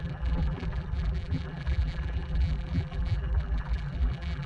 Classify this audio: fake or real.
fake